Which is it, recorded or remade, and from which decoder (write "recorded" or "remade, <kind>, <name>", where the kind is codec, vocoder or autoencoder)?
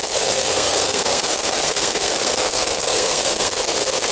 remade, codec, SNAC